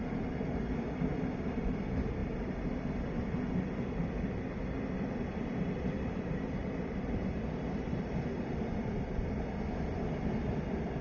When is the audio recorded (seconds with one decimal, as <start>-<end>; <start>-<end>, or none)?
0.0-6.6; 8.1-11.0